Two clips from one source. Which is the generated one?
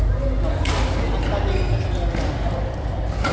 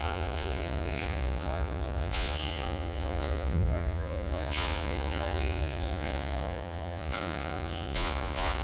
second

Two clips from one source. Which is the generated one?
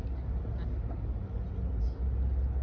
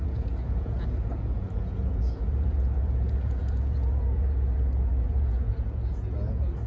second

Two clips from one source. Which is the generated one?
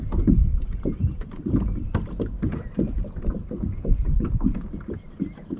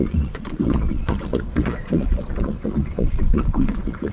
second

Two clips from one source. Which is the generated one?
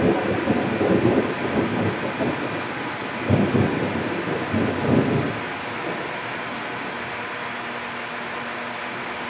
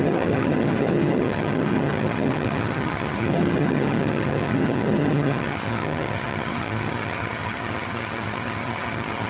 second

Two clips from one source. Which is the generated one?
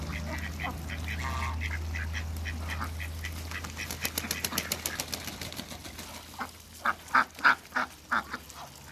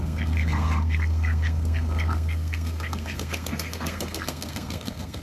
second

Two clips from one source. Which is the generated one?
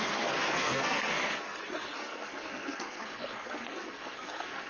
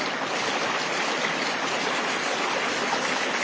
first